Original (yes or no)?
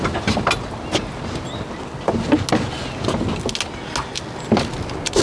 yes